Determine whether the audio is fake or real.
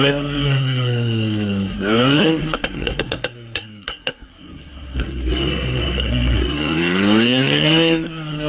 fake